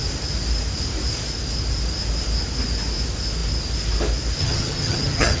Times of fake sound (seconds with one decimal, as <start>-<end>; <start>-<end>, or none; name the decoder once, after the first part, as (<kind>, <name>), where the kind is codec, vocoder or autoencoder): 4.4-5.4 (vocoder, HiFi-GAN)